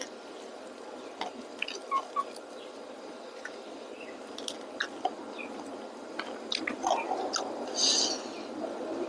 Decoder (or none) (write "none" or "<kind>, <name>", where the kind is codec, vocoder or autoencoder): none